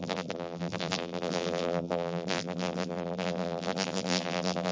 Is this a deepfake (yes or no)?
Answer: yes